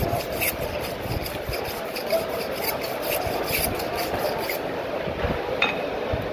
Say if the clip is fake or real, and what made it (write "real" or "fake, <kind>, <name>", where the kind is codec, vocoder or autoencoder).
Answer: fake, vocoder, BigVGAN v2